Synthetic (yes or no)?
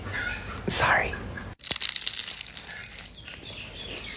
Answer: no